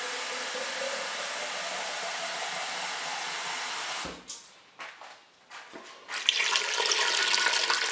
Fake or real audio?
real